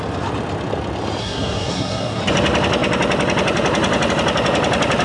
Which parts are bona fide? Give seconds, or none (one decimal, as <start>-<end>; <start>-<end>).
0.0-1.2; 2.2-5.0